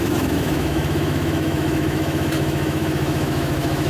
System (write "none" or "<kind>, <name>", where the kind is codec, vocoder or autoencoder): autoencoder, DAC-VAE